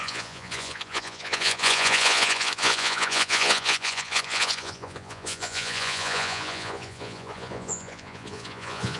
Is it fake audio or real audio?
fake